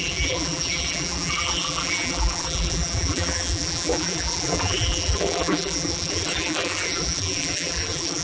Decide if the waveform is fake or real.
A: fake